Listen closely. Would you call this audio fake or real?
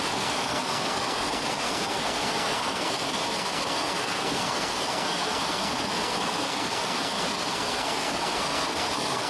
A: fake